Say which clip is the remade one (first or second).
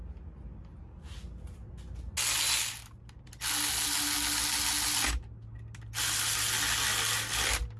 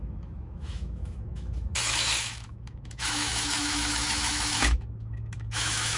second